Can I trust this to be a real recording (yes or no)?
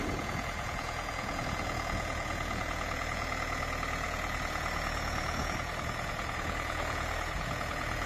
no